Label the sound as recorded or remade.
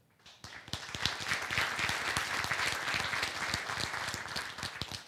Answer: recorded